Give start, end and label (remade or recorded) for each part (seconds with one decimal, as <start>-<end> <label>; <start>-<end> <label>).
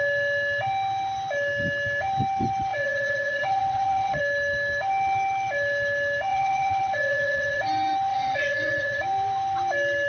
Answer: 0.0-2.7 recorded; 2.7-4.2 remade; 4.2-6.3 recorded; 6.3-7.6 remade; 7.6-8.1 recorded; 8.1-9.0 remade; 9.0-10.1 recorded